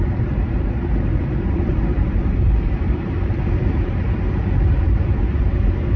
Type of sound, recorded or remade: remade